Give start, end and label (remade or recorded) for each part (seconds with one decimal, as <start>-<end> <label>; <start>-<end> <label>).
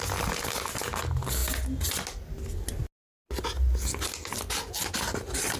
0.0-5.6 recorded